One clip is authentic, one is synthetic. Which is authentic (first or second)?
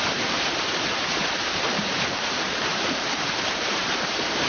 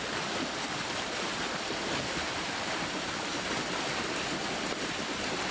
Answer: second